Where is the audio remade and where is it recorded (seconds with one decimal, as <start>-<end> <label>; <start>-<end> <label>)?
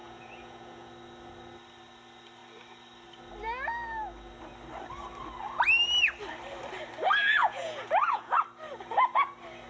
0.0-0.9 remade; 0.9-7.4 recorded; 7.4-8.3 remade; 8.3-9.7 recorded